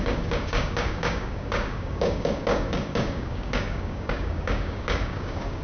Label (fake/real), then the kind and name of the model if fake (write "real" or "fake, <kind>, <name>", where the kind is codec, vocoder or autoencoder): fake, codec, DAC